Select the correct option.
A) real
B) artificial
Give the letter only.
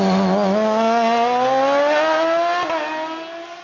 A